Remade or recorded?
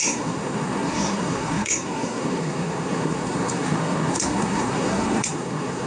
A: remade